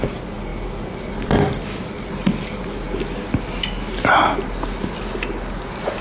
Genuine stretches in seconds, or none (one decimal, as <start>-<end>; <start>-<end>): 0.0-6.0